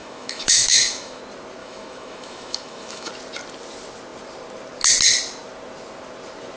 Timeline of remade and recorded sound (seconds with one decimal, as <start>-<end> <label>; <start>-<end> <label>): 0.0-1.2 remade; 1.2-1.6 recorded; 1.6-3.1 remade; 3.1-6.6 recorded